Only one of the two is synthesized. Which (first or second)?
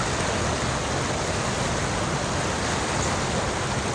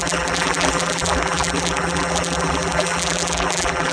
second